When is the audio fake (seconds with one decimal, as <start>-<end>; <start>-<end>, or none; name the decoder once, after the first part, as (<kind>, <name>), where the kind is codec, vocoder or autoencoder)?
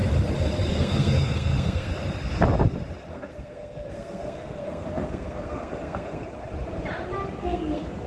0.7-1.9 (codec, SNAC); 3.1-6.3; 7.4-8.1